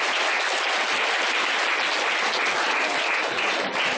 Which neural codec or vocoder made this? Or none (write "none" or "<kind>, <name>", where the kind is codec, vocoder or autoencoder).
none